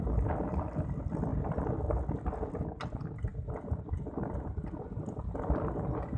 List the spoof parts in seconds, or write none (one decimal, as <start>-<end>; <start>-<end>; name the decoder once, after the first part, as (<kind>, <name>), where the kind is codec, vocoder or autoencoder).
1.3-2.5 (vocoder, BigVGAN v2); 3.3-6.2